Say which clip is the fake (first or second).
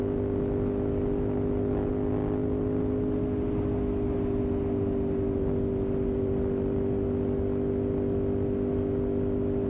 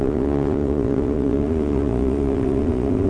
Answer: second